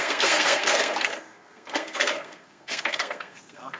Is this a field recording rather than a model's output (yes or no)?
no